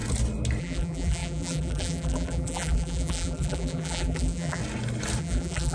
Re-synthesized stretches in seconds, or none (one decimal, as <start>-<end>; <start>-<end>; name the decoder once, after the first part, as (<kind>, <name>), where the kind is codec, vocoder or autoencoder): 0.6-4.6 (vocoder, BigVGAN v2); 5.2-5.7

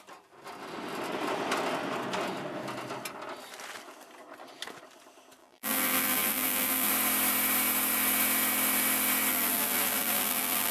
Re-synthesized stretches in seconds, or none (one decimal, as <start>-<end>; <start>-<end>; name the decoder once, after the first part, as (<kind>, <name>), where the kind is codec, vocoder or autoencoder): 5.4-6.9 (vocoder, BigVGAN v2); 9.3-10.7

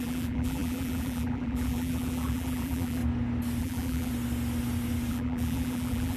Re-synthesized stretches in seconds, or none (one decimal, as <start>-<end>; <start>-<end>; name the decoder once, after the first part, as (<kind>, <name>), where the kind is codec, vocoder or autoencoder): 0.0-3.0 (vocoder, BigVGAN v2); 3.6-4.1; 5.1-6.2

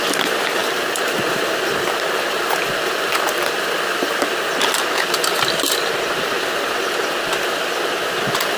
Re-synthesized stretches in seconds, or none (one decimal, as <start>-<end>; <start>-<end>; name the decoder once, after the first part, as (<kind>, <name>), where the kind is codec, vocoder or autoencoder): 0.6-4.7 (vocoder, BigVGAN v2)

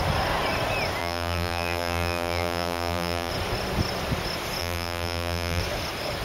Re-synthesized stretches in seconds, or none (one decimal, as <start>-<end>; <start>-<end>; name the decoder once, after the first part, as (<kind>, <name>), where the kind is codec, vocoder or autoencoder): 1.0-3.3 (vocoder, BigVGAN v2); 4.6-5.6

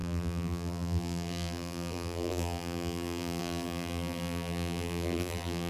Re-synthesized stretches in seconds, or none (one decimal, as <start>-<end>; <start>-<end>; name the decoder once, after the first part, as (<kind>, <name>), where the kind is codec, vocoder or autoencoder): 0.0-5.7 (vocoder, BigVGAN v2)

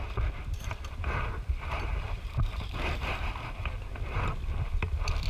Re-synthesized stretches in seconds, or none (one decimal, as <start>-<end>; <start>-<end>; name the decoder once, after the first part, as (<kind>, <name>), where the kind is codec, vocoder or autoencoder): 1.9-3.3 (vocoder, BigVGAN v2)

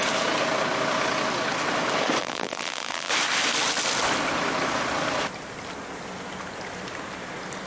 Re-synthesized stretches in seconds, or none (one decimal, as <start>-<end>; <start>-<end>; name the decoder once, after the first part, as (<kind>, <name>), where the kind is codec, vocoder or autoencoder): 2.2-3.1 (vocoder, BigVGAN v2)